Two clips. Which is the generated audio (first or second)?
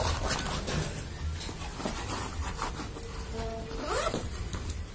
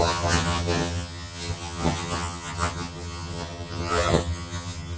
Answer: second